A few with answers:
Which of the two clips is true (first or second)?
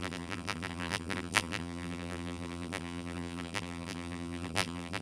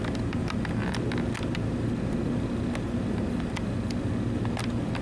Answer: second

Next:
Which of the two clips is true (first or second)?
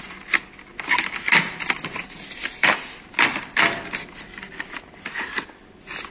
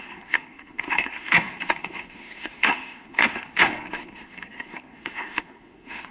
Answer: first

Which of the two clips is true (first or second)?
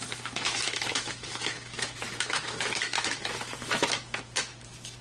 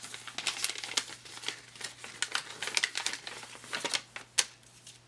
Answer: second